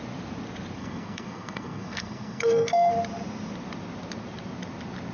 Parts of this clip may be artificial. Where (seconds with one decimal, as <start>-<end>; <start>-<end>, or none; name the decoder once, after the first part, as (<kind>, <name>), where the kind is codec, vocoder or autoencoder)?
0.8-2.9 (codec, SNAC)